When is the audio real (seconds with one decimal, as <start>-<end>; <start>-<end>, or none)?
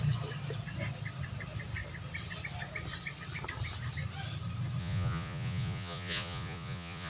0.0-4.8